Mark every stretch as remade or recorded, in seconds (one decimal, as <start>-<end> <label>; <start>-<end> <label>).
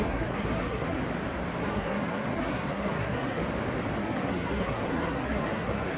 0.0-1.0 remade; 1.0-1.6 recorded; 1.6-3.4 remade; 3.4-4.0 recorded; 4.0-6.0 remade